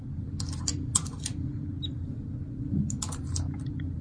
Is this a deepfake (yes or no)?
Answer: no